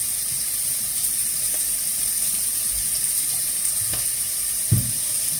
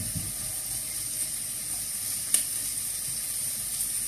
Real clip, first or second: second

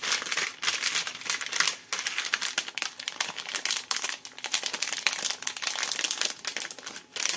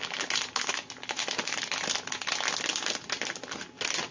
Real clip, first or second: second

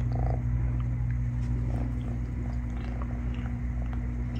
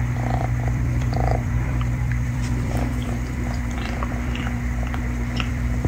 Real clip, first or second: first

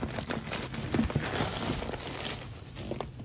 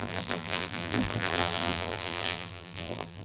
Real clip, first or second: first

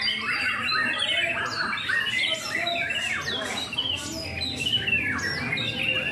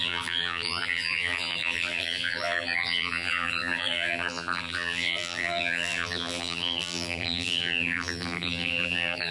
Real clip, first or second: first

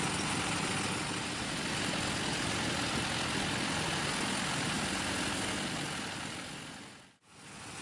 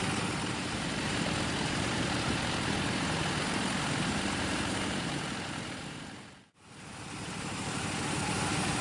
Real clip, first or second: first